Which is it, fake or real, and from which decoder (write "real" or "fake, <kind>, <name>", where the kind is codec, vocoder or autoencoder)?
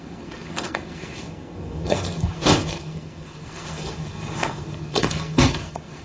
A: fake, codec, SNAC